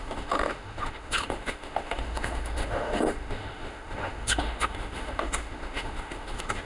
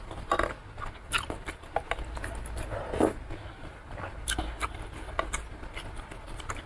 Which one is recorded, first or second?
second